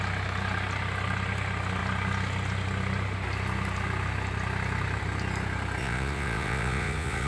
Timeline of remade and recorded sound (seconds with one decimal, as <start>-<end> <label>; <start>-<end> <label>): 0.0-5.8 recorded; 5.8-7.3 remade